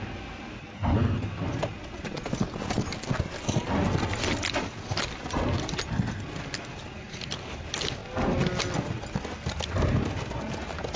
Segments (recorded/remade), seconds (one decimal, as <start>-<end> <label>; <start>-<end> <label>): 0.0-11.0 recorded